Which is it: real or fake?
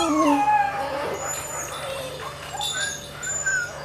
real